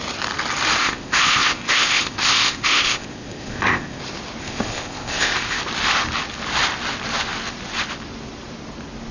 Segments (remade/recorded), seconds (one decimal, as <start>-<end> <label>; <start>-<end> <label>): 0.0-0.8 recorded; 0.8-4.0 remade; 4.0-4.4 recorded; 4.4-5.6 remade; 5.6-9.1 recorded